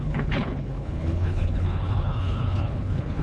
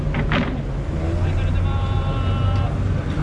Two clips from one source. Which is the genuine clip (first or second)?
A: second